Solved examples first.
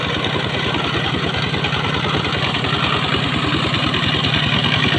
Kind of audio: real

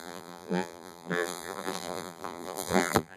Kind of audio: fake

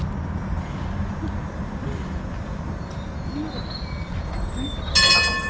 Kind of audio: real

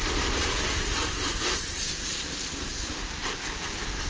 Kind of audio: fake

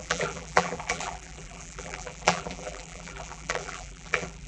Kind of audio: fake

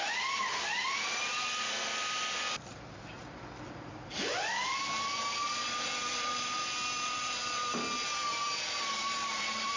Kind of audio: fake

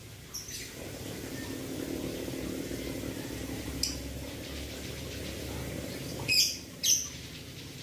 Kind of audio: real